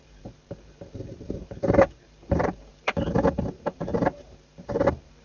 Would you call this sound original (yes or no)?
no